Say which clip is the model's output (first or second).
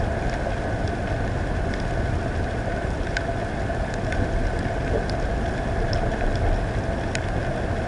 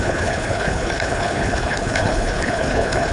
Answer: second